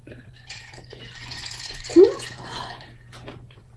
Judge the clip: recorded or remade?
remade